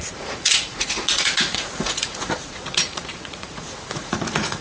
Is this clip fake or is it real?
fake